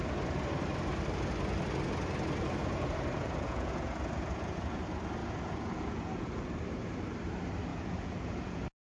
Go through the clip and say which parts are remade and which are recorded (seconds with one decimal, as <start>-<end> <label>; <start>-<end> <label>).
0.0-2.6 recorded; 2.6-4.8 remade; 4.8-5.2 recorded; 5.2-6.3 remade; 6.3-7.7 recorded; 7.7-8.6 remade; 8.6-9.0 recorded